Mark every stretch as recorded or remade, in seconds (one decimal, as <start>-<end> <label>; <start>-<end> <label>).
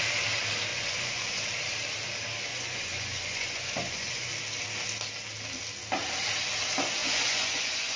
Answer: 0.0-0.7 recorded; 0.7-1.4 remade; 1.4-2.5 recorded; 2.5-4.3 remade; 4.3-7.0 recorded; 7.0-8.0 remade